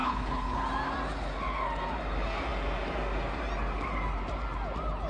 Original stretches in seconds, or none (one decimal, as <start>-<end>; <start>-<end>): 0.6-5.1